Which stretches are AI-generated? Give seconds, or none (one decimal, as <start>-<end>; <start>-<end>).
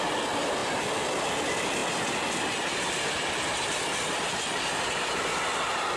none